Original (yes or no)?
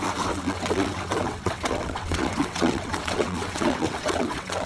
no